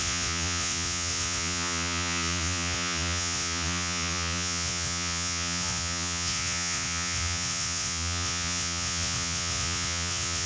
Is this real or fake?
fake